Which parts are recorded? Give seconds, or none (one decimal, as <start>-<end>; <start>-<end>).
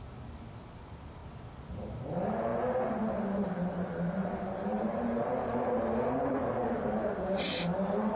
1.2-1.8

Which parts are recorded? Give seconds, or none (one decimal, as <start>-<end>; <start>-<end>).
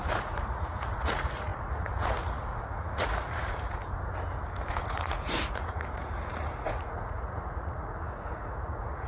3.8-4.7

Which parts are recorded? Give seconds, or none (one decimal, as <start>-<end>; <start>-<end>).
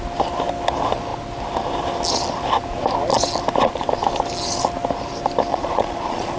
0.0-5.5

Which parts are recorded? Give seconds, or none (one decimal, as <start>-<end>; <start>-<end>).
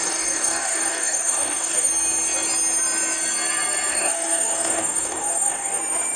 1.9-3.9; 5.8-6.2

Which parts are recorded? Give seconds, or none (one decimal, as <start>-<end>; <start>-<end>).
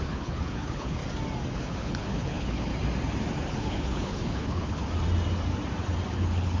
1.0-1.6; 2.7-3.5; 4.8-6.1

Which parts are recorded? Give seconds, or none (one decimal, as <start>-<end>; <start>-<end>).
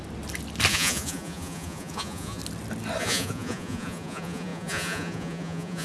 0.0-0.7; 2.4-3.0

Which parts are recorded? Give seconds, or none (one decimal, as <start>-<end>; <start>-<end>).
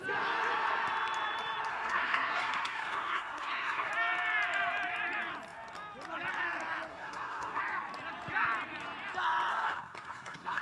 0.0-1.7; 3.9-6.9; 7.6-9.5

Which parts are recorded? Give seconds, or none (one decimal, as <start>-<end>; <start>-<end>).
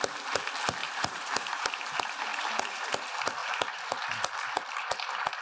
0.0-0.8; 1.6-2.3; 2.9-3.4; 3.9-5.4